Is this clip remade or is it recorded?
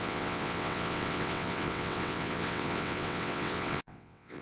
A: remade